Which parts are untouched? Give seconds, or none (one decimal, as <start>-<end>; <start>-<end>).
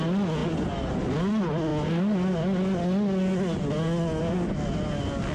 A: 0.0-5.3